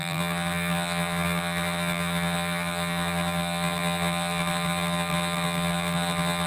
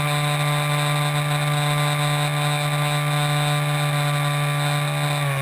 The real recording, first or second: second